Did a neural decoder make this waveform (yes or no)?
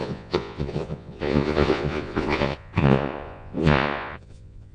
yes